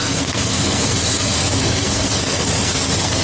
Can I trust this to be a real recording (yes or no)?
no